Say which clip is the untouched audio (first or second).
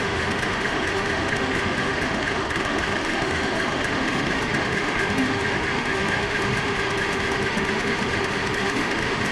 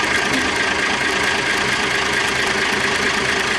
second